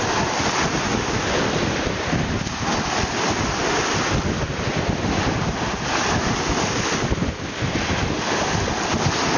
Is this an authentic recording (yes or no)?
yes